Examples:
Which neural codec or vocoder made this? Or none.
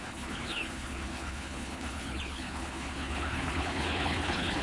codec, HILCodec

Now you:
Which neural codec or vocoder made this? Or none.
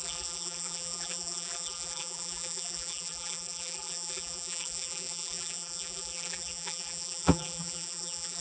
vocoder, BigVGAN v2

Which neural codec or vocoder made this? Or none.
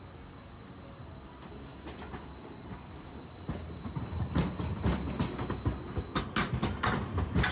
none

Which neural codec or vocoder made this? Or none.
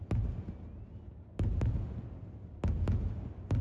none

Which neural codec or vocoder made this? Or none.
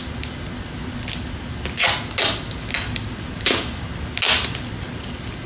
none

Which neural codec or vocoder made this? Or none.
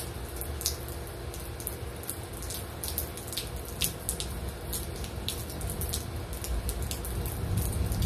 none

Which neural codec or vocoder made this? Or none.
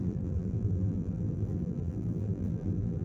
vocoder, BigVGAN v2